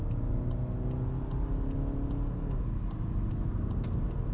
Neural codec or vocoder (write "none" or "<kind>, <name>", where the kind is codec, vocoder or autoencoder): none